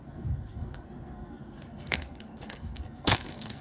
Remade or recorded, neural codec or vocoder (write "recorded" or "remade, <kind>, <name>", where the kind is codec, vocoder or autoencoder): remade, codec, SNAC